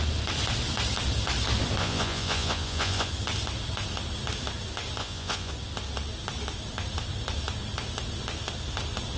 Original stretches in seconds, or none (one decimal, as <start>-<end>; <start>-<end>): 0.0-1.8; 3.1-5.0; 5.5-9.2